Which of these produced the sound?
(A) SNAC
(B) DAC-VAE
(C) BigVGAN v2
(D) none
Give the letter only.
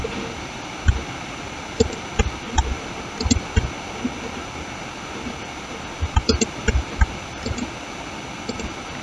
D